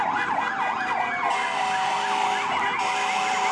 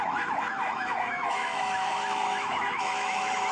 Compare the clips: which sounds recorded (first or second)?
first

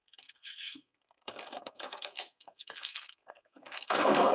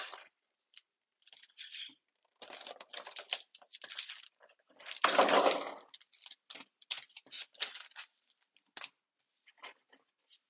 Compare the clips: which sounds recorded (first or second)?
second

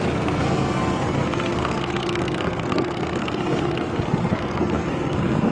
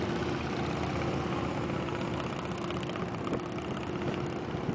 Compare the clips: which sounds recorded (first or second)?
second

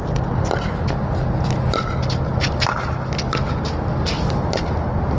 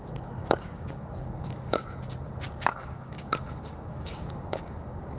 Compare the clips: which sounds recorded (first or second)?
first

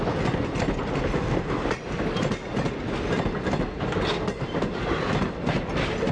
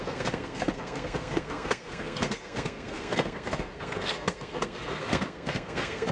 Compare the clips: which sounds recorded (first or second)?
first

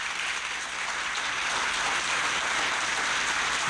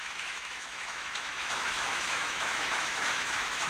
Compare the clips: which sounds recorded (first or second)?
first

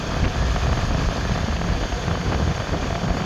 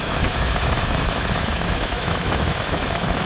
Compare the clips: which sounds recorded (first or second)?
first